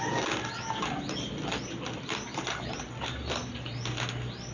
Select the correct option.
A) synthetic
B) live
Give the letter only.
B